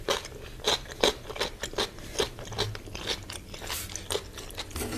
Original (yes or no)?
yes